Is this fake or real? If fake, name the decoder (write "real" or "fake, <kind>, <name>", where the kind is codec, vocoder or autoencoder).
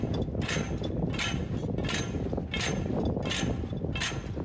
real